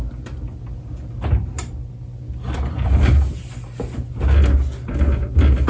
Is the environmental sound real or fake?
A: real